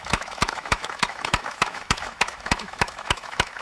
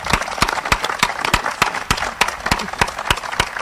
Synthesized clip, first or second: first